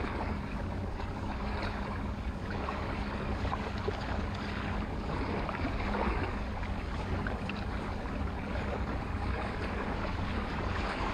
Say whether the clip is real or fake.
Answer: fake